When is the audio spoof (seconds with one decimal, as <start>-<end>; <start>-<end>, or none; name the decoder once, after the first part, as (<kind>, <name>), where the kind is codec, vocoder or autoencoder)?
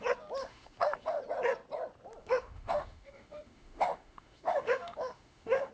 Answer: 0.4-1.2 (autoencoder, DAC-VAE); 2.2-5.7